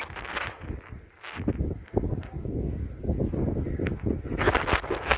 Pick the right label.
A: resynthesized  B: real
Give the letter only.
B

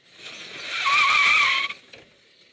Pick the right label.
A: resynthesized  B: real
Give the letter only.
B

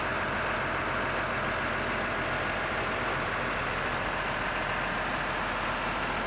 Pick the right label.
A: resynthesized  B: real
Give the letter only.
B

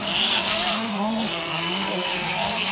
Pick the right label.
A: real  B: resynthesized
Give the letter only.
B